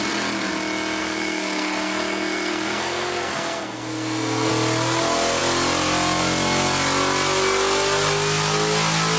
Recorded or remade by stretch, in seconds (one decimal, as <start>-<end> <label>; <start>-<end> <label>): 0.0-1.0 recorded; 1.0-4.5 remade; 4.5-9.2 recorded